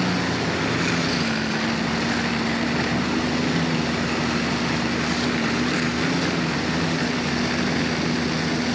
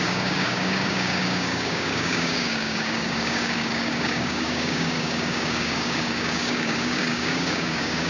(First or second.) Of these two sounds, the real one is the first